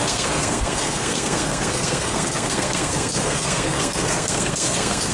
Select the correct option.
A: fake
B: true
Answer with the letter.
A